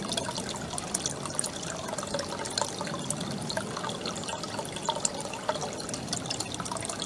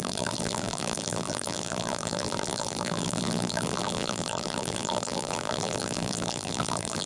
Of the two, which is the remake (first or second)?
second